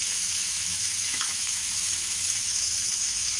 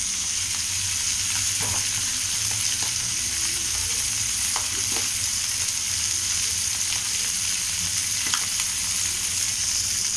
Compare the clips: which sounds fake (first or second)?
first